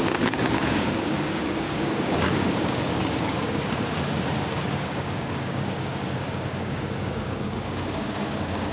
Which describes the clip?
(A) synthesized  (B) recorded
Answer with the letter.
A